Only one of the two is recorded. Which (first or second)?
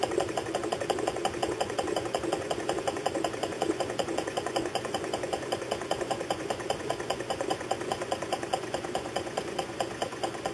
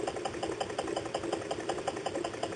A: second